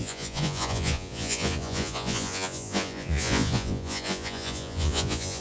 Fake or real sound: fake